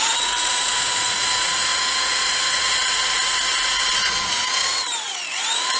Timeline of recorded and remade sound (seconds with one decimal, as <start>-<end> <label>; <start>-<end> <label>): 0.0-5.8 remade

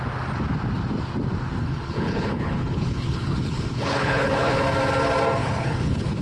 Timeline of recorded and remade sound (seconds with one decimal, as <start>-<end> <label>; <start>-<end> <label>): 0.0-1.6 recorded; 1.6-4.6 remade; 4.6-5.4 recorded; 5.4-6.2 remade

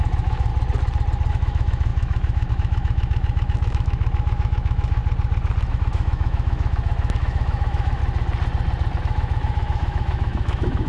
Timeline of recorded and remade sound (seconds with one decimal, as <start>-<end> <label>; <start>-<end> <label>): 0.0-0.5 remade; 0.5-1.3 recorded; 1.3-5.0 remade; 5.0-5.7 recorded; 5.7-8.0 remade; 8.0-9.0 recorded; 9.0-10.9 remade

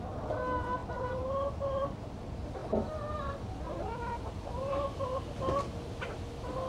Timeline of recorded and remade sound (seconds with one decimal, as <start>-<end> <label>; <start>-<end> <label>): 0.0-6.7 recorded